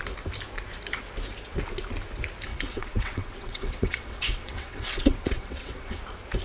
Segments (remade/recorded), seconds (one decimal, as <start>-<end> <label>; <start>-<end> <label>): 0.0-2.5 recorded; 2.5-6.0 remade; 6.0-6.4 recorded